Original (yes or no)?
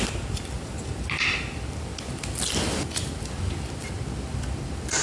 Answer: yes